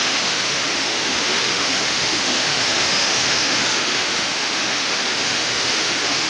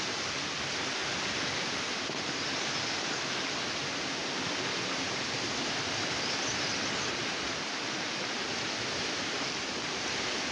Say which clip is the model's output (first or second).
first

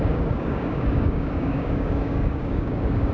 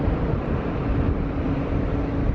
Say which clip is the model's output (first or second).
first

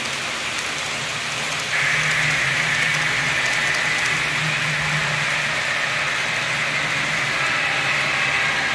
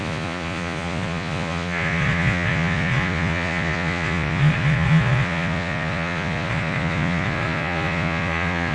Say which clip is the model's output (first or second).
second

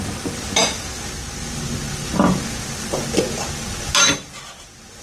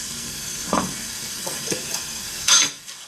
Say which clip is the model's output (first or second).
second